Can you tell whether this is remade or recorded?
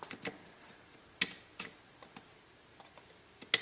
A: recorded